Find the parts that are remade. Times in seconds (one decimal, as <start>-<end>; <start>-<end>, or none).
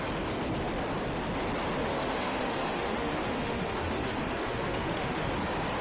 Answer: 1.8-5.3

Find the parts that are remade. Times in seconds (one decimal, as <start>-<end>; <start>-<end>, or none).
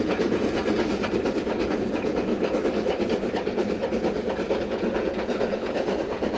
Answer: 0.0-0.6; 1.7-2.3; 4.6-6.4